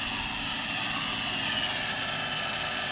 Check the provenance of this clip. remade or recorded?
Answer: recorded